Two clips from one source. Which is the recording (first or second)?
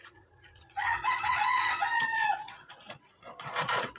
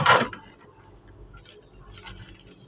second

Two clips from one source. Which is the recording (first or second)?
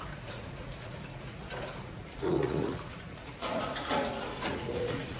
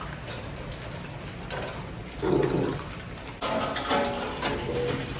second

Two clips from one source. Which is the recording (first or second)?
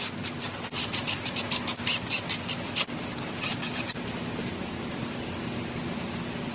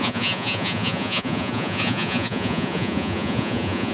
first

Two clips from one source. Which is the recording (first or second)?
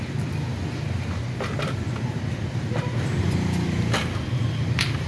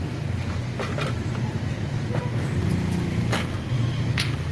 second